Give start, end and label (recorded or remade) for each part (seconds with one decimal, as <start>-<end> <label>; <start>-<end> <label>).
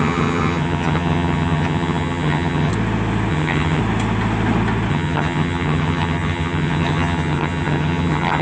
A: 0.0-2.7 remade; 2.7-3.3 recorded; 3.3-3.8 remade; 3.8-4.9 recorded; 4.9-8.4 remade